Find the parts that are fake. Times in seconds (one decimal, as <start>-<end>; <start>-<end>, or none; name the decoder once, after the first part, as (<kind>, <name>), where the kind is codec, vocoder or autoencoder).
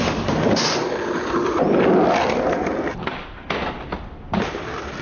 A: none